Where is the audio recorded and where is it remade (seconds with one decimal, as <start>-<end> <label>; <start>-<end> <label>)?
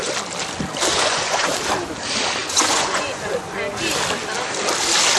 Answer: 0.0-0.9 recorded; 0.9-1.5 remade; 1.5-2.4 recorded; 2.4-3.6 remade; 3.6-5.2 recorded